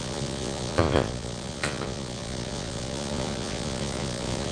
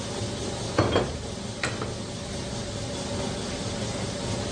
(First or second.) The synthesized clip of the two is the first